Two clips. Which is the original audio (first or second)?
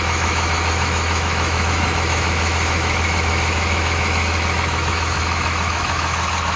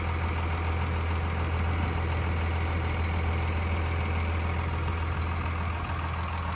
second